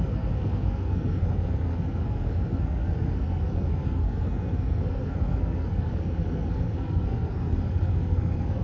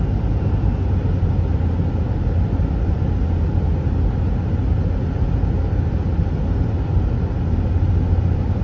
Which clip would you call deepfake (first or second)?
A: first